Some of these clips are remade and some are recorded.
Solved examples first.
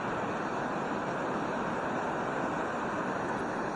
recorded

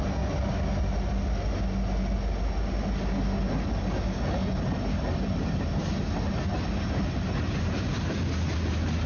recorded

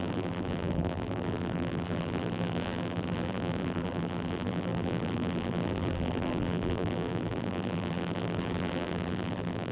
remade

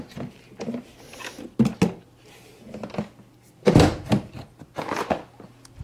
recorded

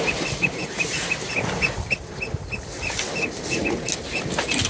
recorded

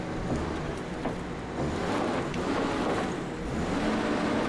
recorded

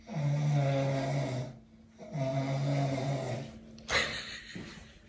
recorded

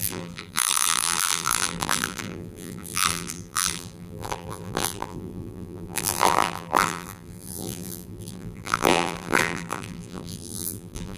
remade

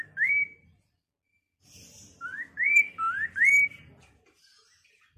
recorded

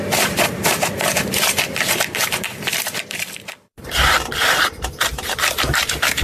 remade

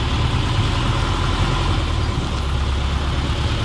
recorded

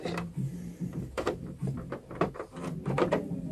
remade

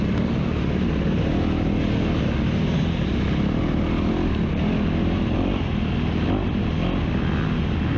recorded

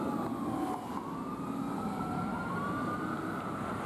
recorded